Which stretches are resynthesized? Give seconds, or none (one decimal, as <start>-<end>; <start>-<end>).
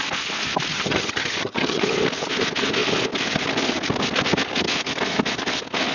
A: 0.7-1.8